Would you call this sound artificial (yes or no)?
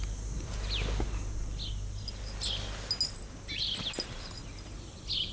no